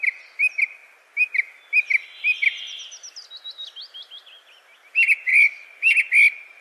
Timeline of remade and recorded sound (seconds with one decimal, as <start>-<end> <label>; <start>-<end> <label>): 0.0-6.6 recorded